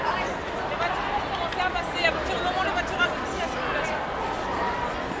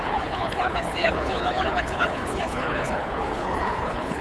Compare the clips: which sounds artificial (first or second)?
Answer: second